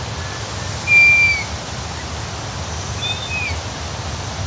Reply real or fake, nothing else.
real